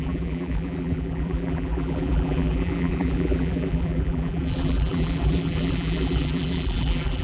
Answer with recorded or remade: remade